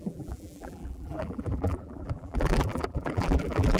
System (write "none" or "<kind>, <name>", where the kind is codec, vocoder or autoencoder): vocoder, BigVGAN v2